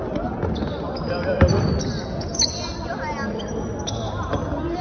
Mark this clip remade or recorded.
recorded